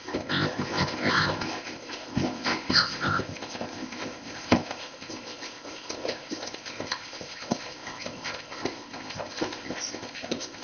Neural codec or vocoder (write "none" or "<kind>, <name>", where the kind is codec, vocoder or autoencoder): codec, ZipCodec